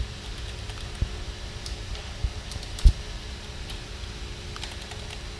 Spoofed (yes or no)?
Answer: no